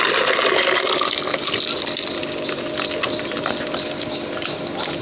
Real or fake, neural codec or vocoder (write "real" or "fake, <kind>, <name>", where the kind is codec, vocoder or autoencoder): real